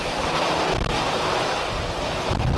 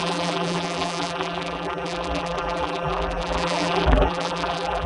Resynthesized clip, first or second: second